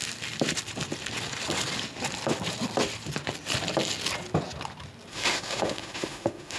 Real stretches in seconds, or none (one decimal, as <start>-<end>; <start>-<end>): 0.0-5.1